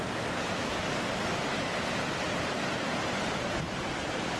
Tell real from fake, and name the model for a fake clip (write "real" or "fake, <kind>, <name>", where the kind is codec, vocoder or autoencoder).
real